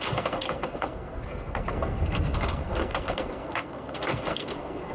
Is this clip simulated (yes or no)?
yes